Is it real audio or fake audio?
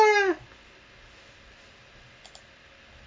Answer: real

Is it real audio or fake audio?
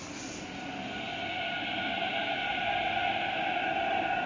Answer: real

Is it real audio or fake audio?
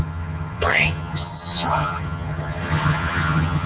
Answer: fake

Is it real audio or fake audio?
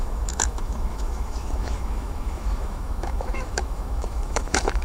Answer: fake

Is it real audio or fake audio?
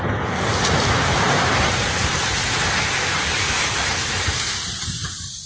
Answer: real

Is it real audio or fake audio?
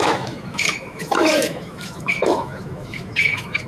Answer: fake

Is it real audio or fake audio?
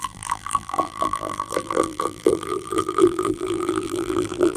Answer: fake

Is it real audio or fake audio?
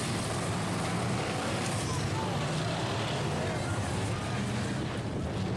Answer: real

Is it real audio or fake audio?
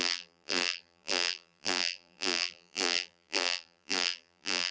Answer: fake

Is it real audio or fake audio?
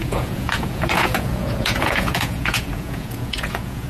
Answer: fake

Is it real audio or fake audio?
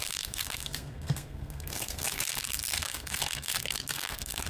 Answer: fake